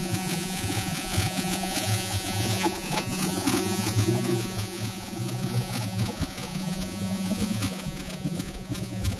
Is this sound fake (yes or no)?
yes